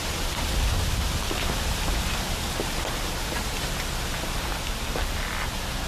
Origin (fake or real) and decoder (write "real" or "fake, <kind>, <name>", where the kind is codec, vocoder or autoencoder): real